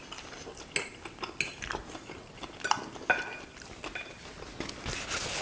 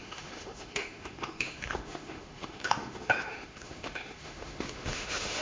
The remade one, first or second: second